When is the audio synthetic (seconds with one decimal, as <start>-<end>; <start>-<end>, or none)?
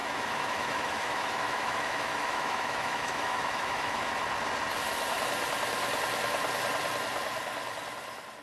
0.0-4.0